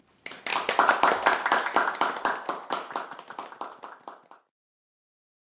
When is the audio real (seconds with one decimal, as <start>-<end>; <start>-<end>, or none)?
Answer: 0.0-0.5; 3.2-5.5